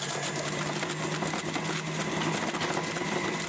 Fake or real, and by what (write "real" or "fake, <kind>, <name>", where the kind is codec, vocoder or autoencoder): real